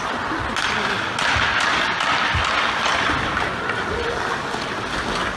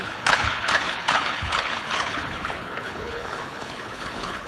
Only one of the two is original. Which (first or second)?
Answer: first